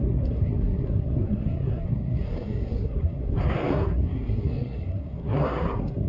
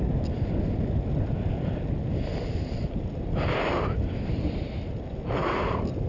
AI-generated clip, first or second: first